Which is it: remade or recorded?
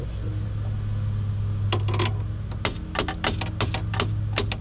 recorded